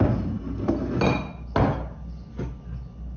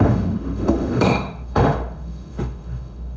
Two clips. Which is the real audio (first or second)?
first